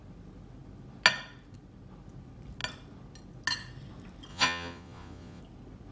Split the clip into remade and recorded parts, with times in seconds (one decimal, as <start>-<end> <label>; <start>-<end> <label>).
0.0-4.3 recorded; 4.3-5.4 remade; 5.4-5.9 recorded